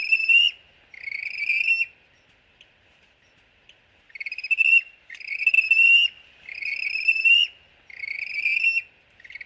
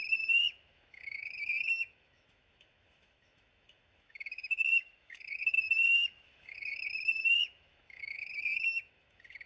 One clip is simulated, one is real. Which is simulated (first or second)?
second